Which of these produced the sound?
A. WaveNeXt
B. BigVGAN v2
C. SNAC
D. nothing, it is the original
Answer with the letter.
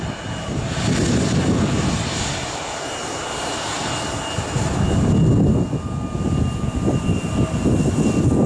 D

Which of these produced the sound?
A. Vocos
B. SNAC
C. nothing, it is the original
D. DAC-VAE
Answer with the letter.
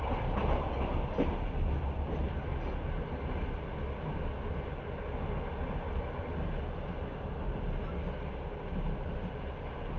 C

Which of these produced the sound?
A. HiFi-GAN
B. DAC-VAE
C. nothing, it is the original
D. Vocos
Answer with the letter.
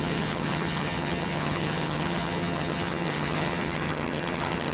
A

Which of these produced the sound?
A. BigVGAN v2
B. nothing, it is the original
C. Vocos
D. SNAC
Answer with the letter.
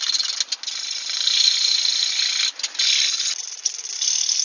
B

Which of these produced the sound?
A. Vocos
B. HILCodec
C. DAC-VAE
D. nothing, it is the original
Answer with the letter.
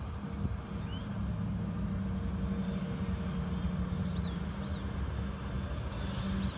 D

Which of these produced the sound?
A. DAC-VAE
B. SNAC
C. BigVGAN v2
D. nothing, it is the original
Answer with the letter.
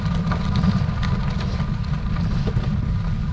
D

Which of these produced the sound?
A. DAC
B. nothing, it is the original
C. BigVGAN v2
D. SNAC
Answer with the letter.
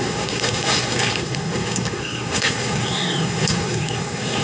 D